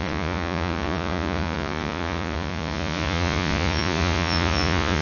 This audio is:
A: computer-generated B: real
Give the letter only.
A